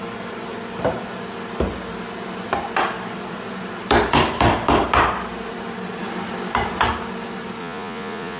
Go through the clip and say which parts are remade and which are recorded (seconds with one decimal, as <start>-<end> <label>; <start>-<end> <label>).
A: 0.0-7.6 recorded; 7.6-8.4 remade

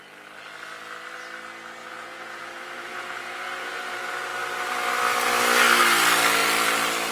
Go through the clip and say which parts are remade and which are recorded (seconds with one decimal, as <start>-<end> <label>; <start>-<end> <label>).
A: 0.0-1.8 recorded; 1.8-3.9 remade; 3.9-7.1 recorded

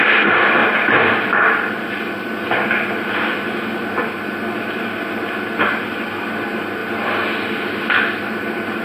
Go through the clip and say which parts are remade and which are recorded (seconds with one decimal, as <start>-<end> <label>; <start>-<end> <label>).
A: 0.0-8.8 recorded

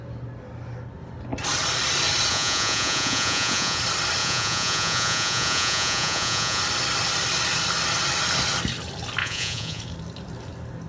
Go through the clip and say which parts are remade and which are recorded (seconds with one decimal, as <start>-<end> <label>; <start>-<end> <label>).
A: 0.0-2.3 recorded; 2.3-3.8 remade; 3.8-4.2 recorded; 4.2-6.6 remade; 6.6-9.2 recorded; 9.2-9.8 remade; 9.8-10.9 recorded

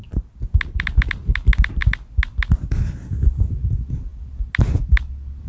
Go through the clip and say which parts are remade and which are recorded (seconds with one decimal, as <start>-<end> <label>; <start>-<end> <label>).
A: 0.0-5.5 recorded

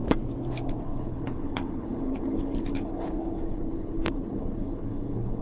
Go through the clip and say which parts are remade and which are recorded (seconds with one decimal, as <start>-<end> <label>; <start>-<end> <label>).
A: 0.0-0.8 recorded; 0.8-5.4 remade